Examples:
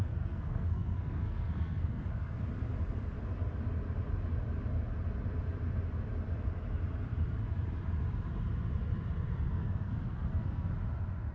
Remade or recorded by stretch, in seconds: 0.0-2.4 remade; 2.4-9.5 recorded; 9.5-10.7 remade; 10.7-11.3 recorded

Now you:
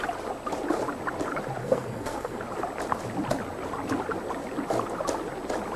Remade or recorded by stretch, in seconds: 0.0-1.6 recorded; 1.6-2.4 remade; 2.4-5.8 recorded

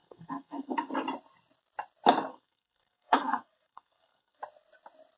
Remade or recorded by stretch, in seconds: 0.0-0.9 remade; 0.9-2.3 recorded; 2.3-4.4 remade; 4.4-5.2 recorded

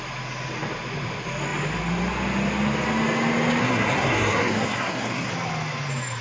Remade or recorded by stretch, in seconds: 0.0-3.6 recorded; 3.6-5.3 remade; 5.3-6.2 recorded

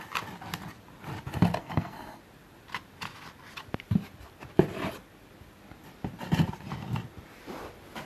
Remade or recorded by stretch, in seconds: 0.0-1.6 recorded; 1.6-2.2 remade; 2.2-8.1 recorded

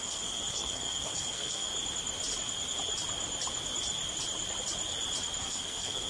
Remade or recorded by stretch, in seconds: 0.0-1.7 remade; 1.7-5.4 recorded; 5.4-6.1 remade

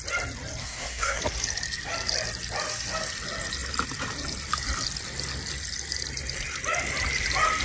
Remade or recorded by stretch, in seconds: 0.0-0.6 recorded; 0.6-1.2 remade; 1.2-7.6 recorded

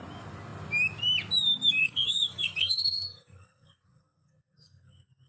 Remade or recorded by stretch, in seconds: 0.0-1.8 recorded; 1.8-5.3 remade